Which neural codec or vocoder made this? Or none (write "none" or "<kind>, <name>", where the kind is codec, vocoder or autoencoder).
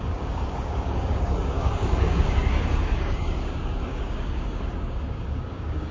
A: codec, DAC